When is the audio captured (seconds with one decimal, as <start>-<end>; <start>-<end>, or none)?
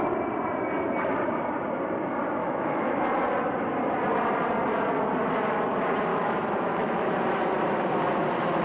0.0-2.4; 3.0-6.1; 7.1-8.6